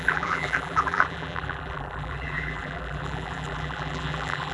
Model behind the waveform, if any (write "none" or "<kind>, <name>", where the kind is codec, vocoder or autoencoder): vocoder, BigVGAN v2